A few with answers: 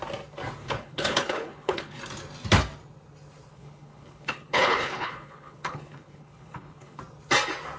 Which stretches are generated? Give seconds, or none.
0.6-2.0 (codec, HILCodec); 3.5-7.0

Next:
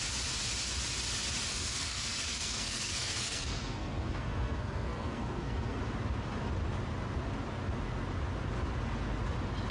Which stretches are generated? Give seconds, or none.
1.5-5.8 (codec, SNAC)

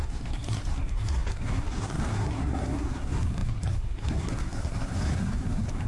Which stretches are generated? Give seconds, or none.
0.0-5.9 (codec, SNAC)

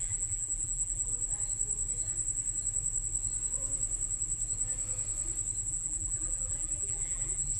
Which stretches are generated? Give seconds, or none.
0.0-1.1 (vocoder, BigVGAN v2); 5.7-7.6

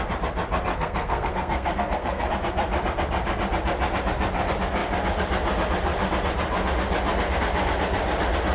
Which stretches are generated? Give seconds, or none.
0.7-2.3 (codec, SNAC)

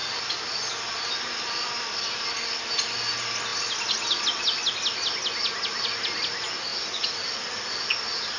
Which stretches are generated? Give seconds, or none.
none

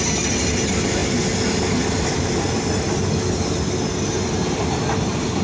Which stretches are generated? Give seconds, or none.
none